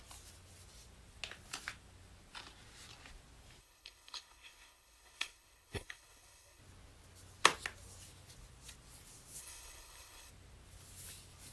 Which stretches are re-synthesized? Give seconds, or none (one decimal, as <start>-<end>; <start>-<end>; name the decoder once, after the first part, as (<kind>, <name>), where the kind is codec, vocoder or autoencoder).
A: 3.6-6.6 (codec, HILCodec); 9.4-10.3